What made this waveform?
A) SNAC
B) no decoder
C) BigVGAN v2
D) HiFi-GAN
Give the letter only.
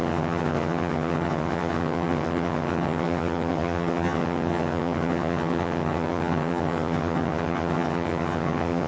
D